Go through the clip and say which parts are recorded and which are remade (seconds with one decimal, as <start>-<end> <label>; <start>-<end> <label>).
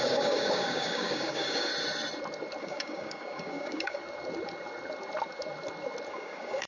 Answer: 0.0-1.7 remade; 1.7-2.6 recorded; 2.6-4.0 remade; 4.0-6.1 recorded; 6.1-6.7 remade